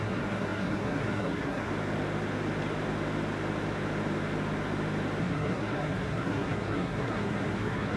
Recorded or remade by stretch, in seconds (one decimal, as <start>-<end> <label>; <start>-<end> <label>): 0.0-1.7 remade; 1.7-5.2 recorded; 5.2-8.0 remade

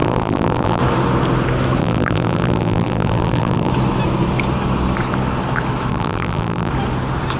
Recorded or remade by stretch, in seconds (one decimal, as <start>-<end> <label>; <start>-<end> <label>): 0.0-0.8 remade; 0.8-1.8 recorded; 1.8-3.7 remade; 3.7-5.9 recorded; 5.9-6.7 remade; 6.7-7.4 recorded

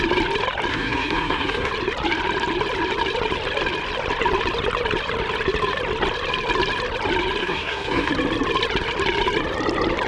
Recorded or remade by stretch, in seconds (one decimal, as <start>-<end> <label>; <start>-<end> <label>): 0.0-0.7 recorded; 0.7-1.7 remade; 1.7-7.4 recorded; 7.4-8.1 remade; 8.1-10.1 recorded

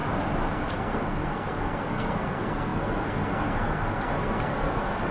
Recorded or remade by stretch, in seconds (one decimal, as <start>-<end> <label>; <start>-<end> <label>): 0.0-0.5 recorded; 0.5-5.1 remade

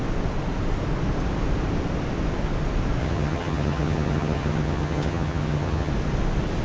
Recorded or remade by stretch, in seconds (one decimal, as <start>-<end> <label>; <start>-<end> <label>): 0.0-3.0 recorded; 3.0-5.9 remade; 5.9-6.6 recorded